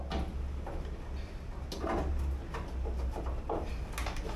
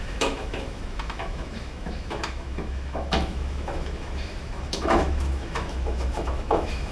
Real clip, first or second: first